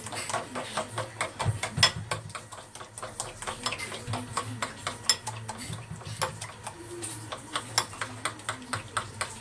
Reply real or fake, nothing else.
real